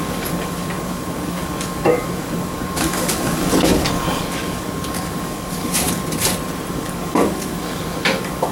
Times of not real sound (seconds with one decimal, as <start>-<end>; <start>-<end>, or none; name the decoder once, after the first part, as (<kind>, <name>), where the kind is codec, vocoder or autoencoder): 0.0-6.0 (codec, DAC); 6.7-8.5

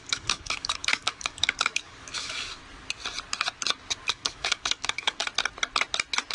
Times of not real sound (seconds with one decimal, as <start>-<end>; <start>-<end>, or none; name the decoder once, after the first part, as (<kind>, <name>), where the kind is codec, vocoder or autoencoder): 0.0-2.6 (codec, DAC); 4.1-5.2

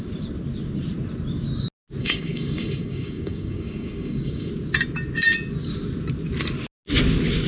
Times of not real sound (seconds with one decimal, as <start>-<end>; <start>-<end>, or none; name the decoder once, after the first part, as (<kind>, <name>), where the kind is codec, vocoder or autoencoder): 2.0-4.5 (codec, DAC)

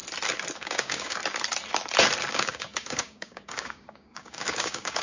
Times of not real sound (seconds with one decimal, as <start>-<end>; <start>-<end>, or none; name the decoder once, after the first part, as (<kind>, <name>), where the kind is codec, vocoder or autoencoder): 0.6-1.2 (codec, DAC); 2.3-5.0